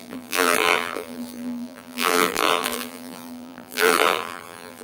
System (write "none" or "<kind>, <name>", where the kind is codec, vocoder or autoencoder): vocoder, BigVGAN v2